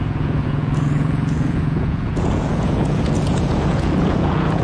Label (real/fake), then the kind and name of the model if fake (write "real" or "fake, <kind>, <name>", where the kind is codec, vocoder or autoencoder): fake, vocoder, Vocos